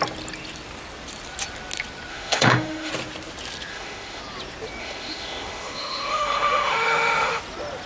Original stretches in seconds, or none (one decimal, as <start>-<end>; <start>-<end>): 0.0-2.1; 2.9-3.7; 4.2-4.8; 7.4-7.9